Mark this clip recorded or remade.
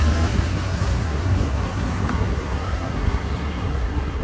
remade